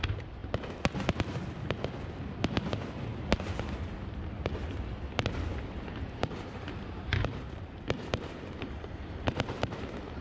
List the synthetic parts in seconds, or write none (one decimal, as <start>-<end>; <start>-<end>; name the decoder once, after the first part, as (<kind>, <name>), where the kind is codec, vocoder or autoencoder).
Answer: 5.5-10.2 (vocoder, BigVGAN v2)